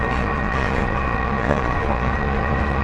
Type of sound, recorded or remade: remade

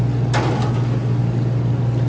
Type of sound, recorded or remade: recorded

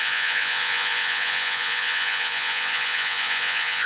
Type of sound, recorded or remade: remade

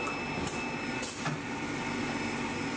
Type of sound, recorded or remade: recorded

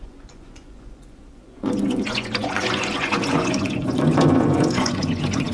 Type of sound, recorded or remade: remade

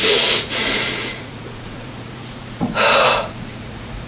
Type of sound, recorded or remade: remade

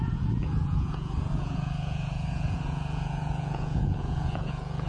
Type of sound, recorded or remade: remade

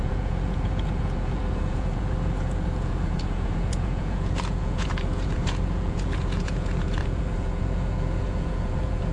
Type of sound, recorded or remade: remade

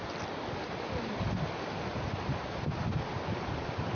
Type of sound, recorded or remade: recorded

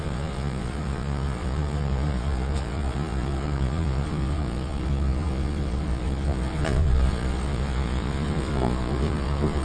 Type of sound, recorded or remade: remade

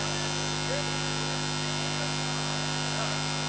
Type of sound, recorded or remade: recorded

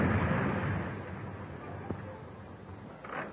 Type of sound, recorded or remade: recorded